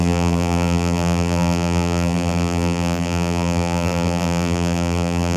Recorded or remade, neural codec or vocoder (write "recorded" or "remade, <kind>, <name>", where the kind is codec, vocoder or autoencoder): remade, vocoder, BigVGAN v2